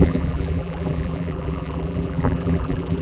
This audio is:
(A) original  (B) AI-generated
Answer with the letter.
B